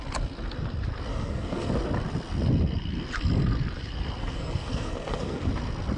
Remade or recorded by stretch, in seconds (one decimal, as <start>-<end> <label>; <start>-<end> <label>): 0.0-1.1 recorded; 1.1-1.7 remade; 1.7-4.2 recorded; 4.2-5.5 remade; 5.5-6.0 recorded